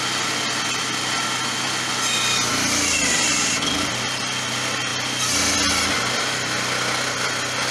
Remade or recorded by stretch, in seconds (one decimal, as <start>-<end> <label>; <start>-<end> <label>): 0.0-7.7 recorded